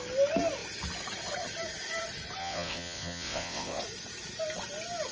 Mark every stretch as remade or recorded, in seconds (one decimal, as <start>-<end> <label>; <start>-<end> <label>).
0.0-2.4 recorded; 2.4-3.8 remade; 3.8-5.1 recorded

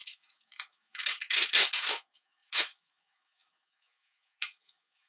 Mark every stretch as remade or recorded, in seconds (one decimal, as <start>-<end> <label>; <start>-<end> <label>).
0.0-5.1 remade

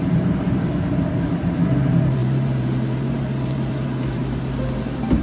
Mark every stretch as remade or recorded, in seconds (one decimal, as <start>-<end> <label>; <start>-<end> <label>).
0.0-4.2 remade; 4.2-5.2 recorded

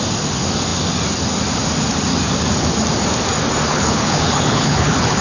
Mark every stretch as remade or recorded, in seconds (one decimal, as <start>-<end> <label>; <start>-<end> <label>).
0.0-3.7 recorded; 3.7-5.2 remade